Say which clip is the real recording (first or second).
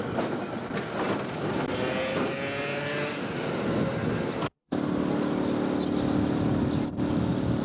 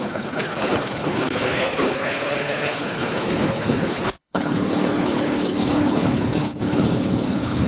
first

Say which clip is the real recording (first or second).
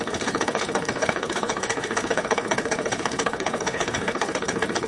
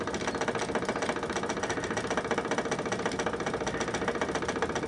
second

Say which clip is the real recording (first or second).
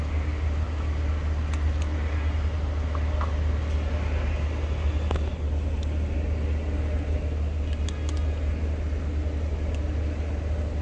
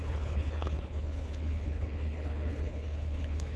first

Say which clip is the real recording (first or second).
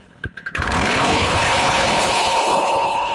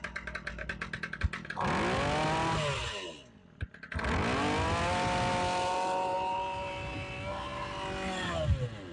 second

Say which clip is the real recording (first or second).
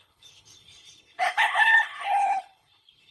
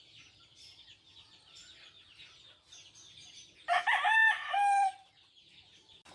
second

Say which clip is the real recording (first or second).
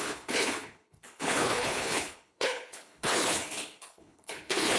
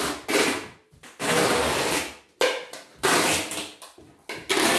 second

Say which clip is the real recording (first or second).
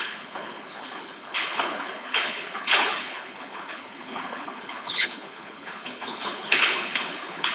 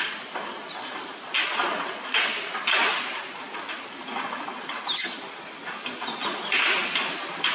second